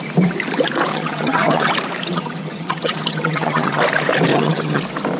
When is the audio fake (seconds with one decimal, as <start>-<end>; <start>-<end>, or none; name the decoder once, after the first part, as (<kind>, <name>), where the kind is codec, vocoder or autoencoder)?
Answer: 0.9-1.7 (vocoder, HiFi-GAN); 2.1-3.8; 4.3-4.8